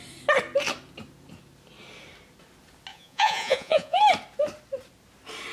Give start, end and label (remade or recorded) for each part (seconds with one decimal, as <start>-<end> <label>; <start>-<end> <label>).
0.0-2.9 recorded; 2.9-4.0 remade; 4.0-5.5 recorded